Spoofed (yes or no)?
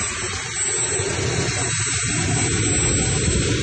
no